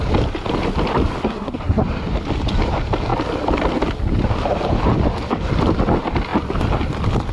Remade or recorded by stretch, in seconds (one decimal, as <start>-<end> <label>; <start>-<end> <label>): 0.0-1.2 recorded; 1.2-1.8 remade; 1.8-7.3 recorded